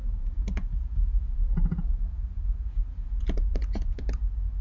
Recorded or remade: remade